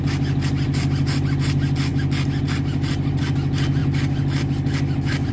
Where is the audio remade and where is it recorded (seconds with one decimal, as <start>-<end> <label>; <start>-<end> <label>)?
0.0-5.3 recorded